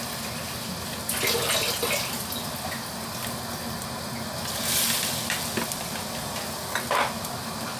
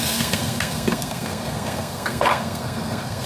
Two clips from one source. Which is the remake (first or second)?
second